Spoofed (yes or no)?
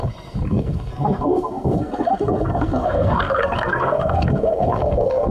yes